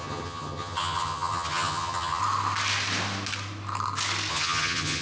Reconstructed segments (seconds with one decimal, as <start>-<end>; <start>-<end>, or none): 0.0-2.2; 4.3-5.0